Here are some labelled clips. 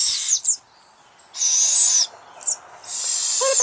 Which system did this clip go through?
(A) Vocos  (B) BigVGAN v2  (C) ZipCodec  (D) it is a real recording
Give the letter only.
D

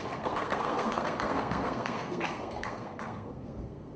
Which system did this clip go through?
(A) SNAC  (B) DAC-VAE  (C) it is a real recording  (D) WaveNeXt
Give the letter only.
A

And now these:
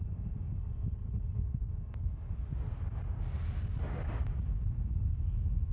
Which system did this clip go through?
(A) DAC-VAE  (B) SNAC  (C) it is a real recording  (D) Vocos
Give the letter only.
C